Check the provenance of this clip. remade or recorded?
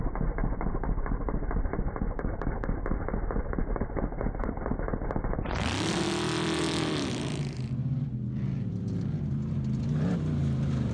remade